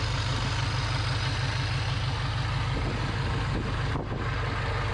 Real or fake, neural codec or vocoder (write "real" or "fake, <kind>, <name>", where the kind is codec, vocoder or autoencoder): real